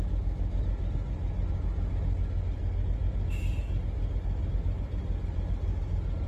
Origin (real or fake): real